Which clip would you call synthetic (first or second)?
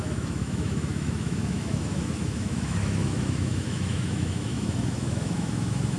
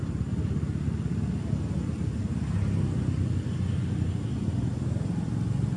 first